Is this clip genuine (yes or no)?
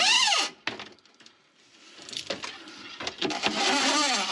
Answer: yes